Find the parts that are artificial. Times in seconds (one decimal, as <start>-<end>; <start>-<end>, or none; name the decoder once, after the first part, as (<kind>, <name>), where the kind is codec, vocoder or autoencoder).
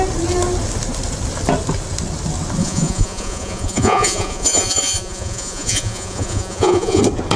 2.6-7.0 (vocoder, Vocos)